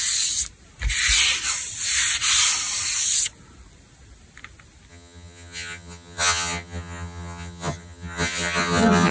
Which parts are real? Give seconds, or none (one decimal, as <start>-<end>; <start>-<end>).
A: 0.0-4.9